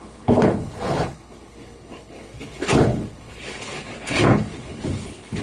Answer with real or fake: fake